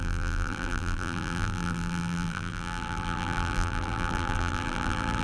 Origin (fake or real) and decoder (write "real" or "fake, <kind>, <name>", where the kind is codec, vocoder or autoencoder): fake, vocoder, BigVGAN v2